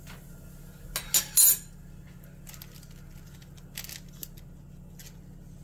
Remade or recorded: recorded